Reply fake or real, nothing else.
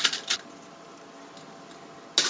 real